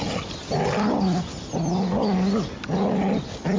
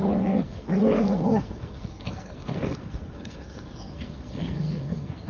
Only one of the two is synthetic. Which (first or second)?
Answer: second